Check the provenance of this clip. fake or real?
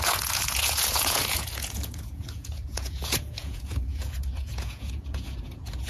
fake